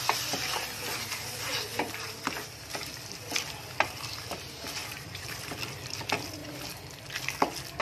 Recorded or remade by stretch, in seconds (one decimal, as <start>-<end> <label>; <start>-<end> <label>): 0.0-1.7 recorded; 1.7-2.5 remade; 2.5-4.8 recorded; 4.8-5.5 remade; 5.5-7.8 recorded